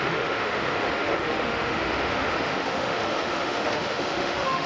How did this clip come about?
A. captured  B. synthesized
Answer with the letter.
B